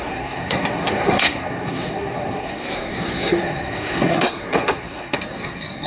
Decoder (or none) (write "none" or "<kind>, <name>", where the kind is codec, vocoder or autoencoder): codec, SNAC